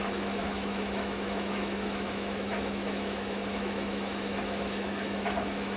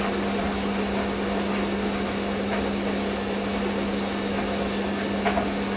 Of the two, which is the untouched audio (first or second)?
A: second